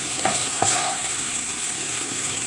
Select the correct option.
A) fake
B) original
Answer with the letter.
A